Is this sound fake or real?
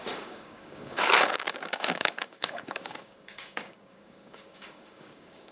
fake